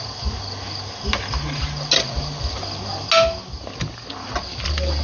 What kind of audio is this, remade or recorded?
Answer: recorded